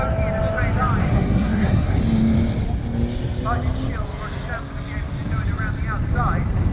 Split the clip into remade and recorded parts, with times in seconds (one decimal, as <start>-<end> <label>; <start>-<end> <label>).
0.0-1.0 recorded; 1.0-2.0 remade; 2.0-6.7 recorded